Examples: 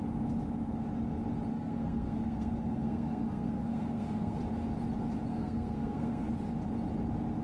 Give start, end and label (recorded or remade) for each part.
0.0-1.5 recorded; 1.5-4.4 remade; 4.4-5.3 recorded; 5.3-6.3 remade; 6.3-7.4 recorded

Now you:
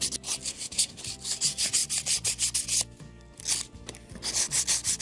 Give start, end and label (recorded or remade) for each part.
0.0-0.5 recorded; 0.5-1.0 remade; 1.0-5.0 recorded

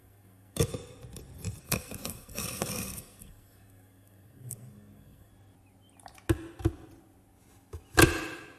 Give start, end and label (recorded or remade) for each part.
0.0-0.7 remade; 0.7-1.6 recorded; 1.6-5.3 remade; 5.3-8.6 recorded

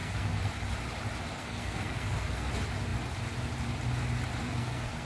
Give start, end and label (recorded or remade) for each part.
0.0-0.5 remade; 0.5-1.3 recorded; 1.3-2.5 remade; 2.5-4.4 recorded; 4.4-5.1 remade

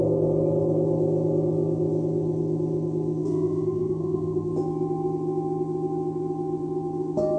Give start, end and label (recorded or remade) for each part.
0.0-3.2 recorded; 3.2-4.5 remade; 4.5-7.4 recorded

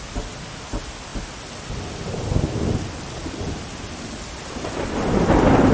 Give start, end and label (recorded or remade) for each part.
0.0-5.7 recorded

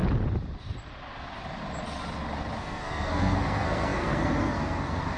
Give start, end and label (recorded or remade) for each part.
0.0-2.6 recorded; 2.6-5.2 remade